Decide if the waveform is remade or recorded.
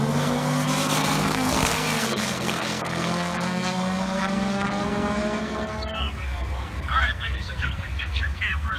remade